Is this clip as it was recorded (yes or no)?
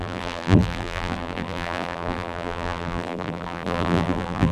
no